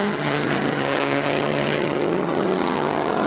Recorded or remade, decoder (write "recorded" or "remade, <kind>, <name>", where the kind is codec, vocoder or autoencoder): remade, vocoder, HiFi-GAN